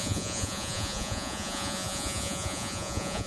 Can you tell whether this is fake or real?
fake